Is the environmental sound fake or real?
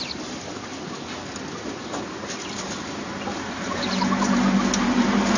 real